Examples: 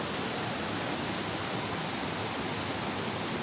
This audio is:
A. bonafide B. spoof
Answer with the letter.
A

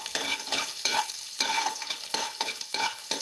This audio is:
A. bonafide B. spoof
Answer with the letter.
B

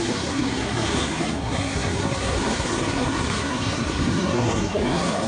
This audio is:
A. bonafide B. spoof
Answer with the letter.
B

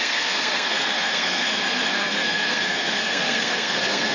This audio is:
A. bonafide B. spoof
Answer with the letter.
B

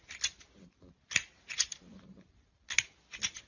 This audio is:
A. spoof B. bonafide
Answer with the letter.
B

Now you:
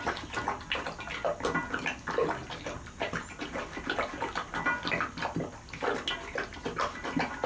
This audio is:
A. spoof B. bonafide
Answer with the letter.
B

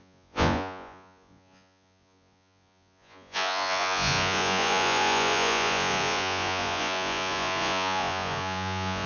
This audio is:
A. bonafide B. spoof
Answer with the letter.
B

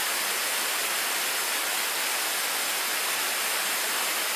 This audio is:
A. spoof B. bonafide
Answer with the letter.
B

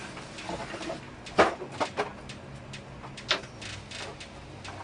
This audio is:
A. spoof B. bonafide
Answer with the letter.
B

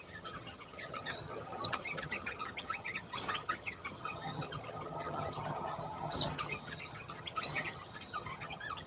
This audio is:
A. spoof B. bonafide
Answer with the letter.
A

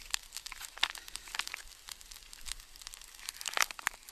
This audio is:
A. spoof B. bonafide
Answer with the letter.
B